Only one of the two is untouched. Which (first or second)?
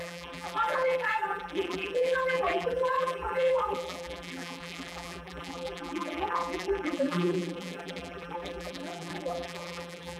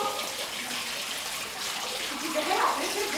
second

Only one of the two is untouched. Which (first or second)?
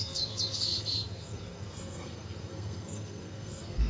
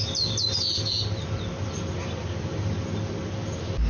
second